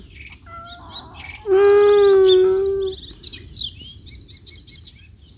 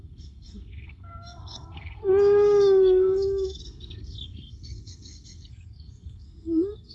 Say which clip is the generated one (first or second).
second